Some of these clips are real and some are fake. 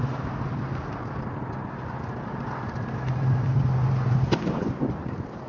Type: real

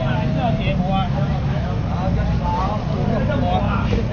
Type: real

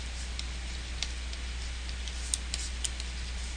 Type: real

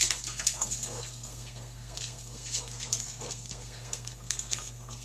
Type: fake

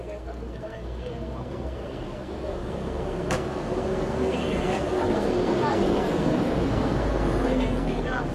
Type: fake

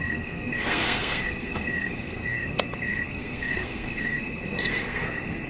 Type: fake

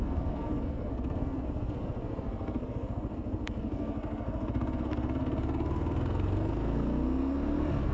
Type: fake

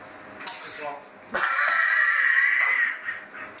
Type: real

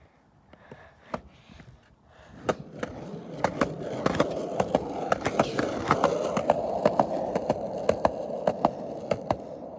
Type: real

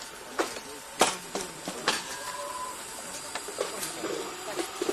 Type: real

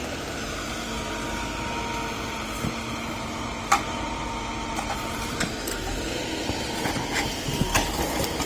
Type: real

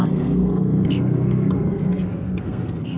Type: fake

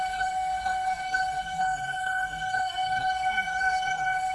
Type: fake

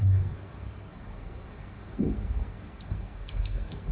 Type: fake